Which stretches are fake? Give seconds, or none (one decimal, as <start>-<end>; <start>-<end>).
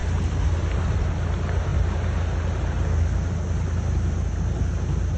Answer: none